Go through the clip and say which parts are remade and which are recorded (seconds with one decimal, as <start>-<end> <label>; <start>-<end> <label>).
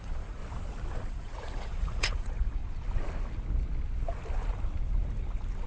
0.0-0.4 remade; 0.4-1.1 recorded; 1.1-2.6 remade; 2.6-5.7 recorded